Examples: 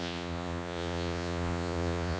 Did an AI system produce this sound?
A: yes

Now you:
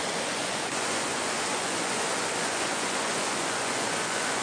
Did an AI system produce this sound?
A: yes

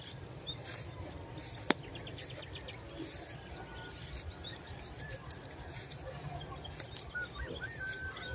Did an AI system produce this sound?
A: no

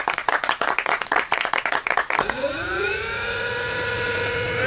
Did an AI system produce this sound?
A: yes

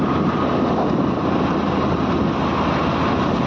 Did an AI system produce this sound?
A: no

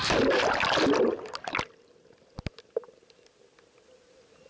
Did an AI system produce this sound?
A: no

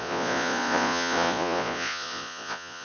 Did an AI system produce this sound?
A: yes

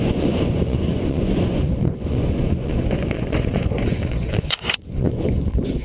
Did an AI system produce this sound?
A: yes